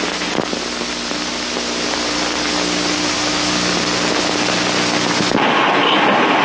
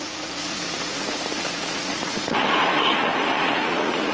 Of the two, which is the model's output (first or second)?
second